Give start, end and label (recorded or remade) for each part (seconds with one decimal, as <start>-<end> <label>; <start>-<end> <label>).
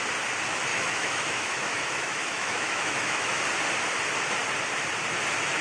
0.0-0.7 recorded; 0.7-3.4 remade; 3.4-5.6 recorded